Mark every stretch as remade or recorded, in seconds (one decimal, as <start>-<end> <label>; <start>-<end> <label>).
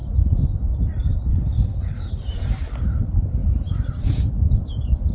0.0-1.3 recorded; 1.3-2.1 remade; 2.1-5.1 recorded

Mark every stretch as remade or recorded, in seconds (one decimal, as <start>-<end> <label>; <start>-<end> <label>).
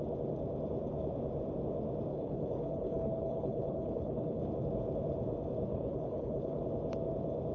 0.0-2.1 recorded; 2.1-4.4 remade; 4.4-5.7 recorded; 5.7-6.6 remade; 6.6-7.5 recorded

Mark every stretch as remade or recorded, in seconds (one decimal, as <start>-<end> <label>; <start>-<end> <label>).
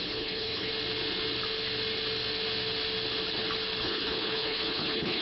0.0-0.7 remade; 0.7-3.8 recorded; 3.8-5.2 remade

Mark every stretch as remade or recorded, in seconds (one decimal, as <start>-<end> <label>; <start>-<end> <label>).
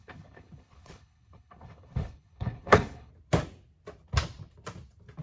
0.0-3.1 remade; 3.1-5.2 recorded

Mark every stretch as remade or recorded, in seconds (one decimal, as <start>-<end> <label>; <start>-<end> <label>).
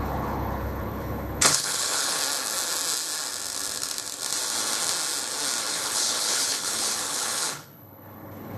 0.0-2.2 remade; 2.2-5.7 recorded; 5.7-8.6 remade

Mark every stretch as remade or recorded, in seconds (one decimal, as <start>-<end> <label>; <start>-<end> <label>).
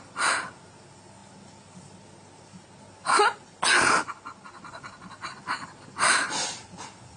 0.0-7.2 recorded